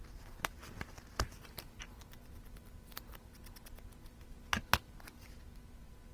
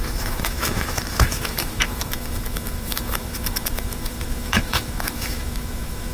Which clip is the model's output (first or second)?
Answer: second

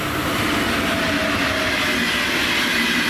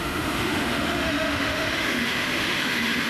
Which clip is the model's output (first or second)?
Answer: second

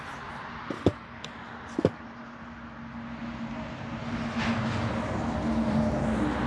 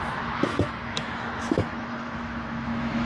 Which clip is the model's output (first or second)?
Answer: second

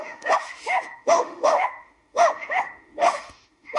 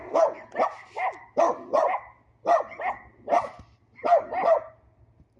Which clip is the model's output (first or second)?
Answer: first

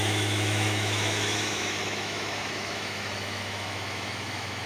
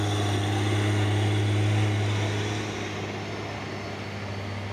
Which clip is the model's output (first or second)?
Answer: first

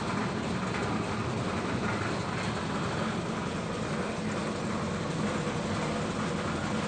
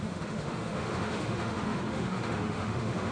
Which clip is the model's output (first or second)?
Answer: second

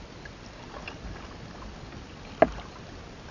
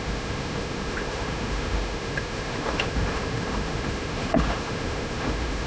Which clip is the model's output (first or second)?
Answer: second